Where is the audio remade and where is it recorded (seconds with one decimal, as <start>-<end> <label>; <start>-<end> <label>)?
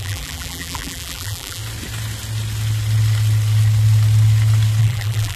0.0-1.6 remade; 1.6-4.8 recorded; 4.8-5.4 remade